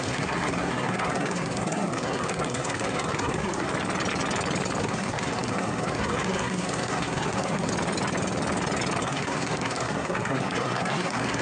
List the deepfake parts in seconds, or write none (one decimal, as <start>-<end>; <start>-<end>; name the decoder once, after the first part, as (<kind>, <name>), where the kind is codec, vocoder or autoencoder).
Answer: 0.0-3.7 (codec, SNAC); 4.8-7.7; 9.0-11.4